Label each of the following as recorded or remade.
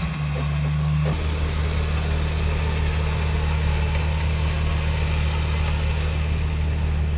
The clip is recorded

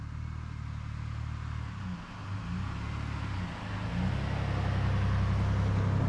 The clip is recorded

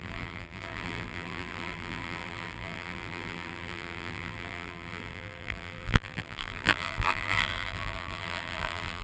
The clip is remade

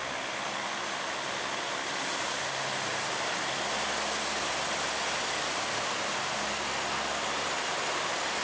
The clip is recorded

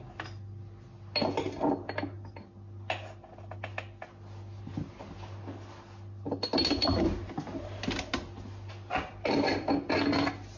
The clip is recorded